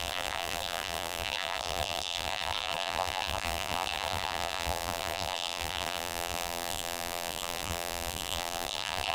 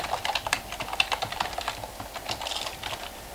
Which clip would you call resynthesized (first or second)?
first